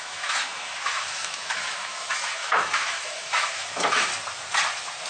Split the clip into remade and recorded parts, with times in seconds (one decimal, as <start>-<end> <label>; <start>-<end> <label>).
0.0-4.1 remade; 4.1-5.1 recorded